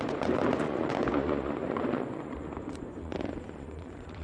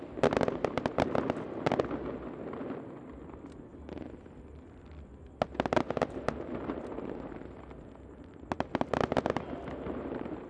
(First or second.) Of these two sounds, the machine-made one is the first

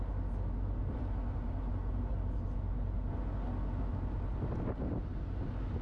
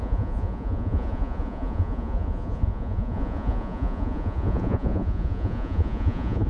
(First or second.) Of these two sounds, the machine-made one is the second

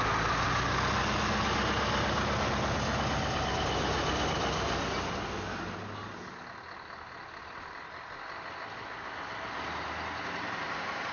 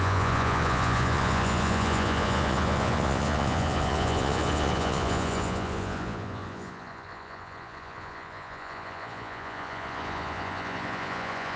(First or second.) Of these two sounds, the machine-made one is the second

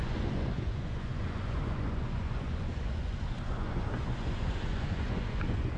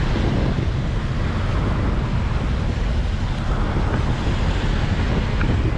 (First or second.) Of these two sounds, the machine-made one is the first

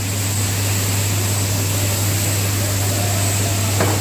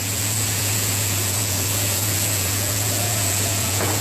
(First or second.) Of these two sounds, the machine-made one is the second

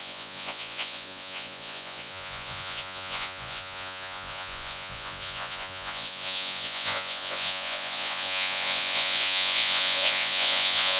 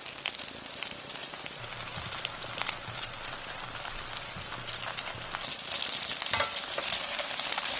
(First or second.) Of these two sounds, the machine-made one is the first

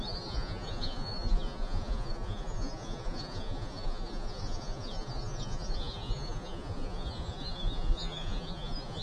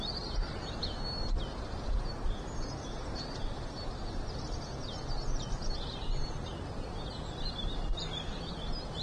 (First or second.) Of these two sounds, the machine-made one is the first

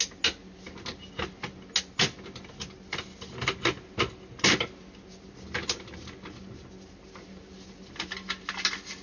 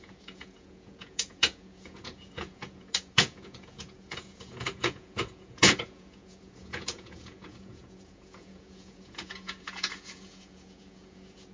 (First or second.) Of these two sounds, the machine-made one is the second